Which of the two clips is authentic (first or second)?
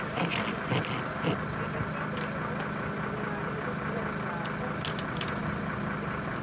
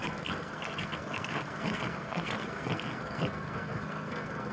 first